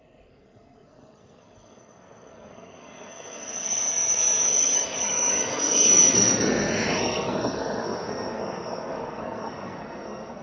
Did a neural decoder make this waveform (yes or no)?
yes